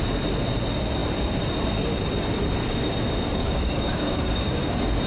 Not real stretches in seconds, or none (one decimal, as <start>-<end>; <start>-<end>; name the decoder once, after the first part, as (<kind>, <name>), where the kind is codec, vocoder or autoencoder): 3.4-4.5 (codec, DAC)